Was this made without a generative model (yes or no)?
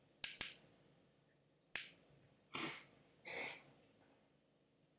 yes